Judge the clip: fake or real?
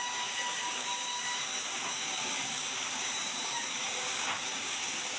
fake